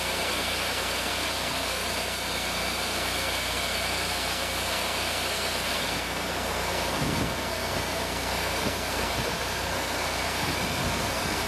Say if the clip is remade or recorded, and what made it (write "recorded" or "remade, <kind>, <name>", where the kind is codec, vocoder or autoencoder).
remade, codec, SNAC